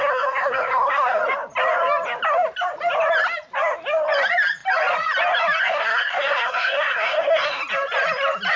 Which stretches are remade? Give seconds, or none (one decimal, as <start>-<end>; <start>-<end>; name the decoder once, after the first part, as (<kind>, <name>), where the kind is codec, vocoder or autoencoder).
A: 0.0-1.2 (codec, SNAC); 5.6-7.6